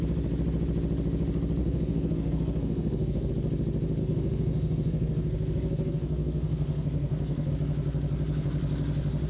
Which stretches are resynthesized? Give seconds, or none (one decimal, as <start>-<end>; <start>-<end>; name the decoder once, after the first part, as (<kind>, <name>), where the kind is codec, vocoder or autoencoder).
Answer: 1.6-3.3 (codec, SNAC); 4.0-7.5